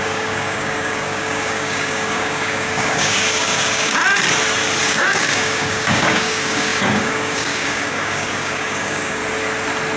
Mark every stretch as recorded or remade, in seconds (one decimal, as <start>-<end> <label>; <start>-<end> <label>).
0.0-4.0 remade; 4.0-4.8 recorded; 4.8-9.2 remade; 9.2-10.0 recorded